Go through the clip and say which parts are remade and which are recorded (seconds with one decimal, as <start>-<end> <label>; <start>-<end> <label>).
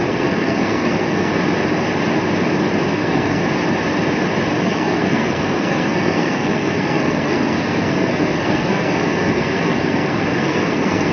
0.0-1.3 remade; 1.3-2.9 recorded; 2.9-3.4 remade; 3.4-4.6 recorded; 4.6-11.1 remade